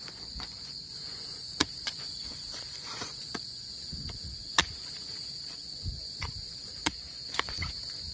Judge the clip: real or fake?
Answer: fake